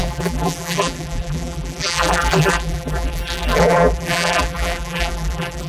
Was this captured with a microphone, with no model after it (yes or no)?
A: no